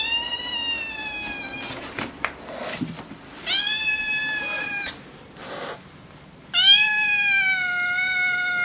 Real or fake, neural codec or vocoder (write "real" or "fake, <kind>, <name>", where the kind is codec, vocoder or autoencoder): real